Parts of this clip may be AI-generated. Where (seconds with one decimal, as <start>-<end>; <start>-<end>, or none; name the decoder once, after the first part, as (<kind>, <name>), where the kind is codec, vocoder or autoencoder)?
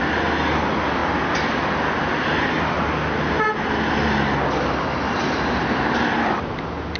none